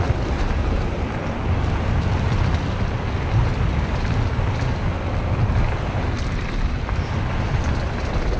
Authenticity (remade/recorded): recorded